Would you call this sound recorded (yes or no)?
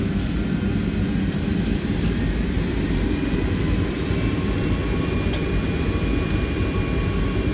yes